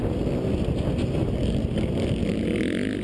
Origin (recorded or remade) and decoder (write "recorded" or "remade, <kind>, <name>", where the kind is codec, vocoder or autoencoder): recorded